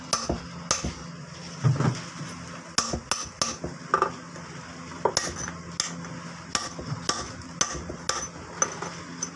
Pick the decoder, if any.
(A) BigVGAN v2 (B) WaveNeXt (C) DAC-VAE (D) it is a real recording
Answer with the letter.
D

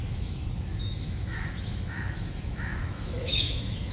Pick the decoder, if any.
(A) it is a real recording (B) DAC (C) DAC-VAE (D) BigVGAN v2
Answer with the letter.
C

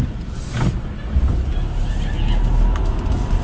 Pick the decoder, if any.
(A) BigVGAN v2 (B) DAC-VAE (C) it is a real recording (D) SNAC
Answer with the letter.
C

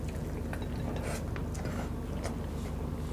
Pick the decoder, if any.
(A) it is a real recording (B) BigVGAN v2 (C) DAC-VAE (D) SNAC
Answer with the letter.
A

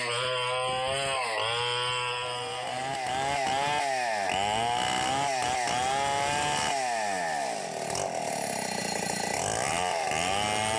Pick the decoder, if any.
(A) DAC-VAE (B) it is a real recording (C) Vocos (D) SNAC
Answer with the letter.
B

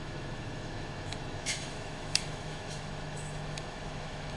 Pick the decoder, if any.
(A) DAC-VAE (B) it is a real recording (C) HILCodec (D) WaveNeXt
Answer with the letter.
A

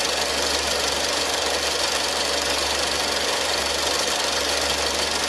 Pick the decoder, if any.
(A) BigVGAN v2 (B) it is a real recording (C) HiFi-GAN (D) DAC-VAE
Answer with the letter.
B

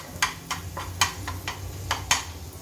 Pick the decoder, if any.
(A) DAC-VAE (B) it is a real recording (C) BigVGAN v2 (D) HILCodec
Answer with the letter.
B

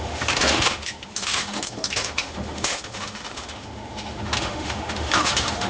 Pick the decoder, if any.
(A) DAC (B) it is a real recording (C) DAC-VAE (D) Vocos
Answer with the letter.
C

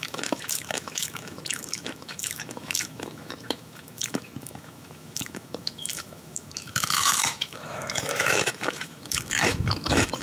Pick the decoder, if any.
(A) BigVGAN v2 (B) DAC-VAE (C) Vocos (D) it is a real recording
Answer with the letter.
B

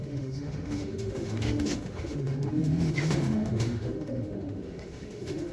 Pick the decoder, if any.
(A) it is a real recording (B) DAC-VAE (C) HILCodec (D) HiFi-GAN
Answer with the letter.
B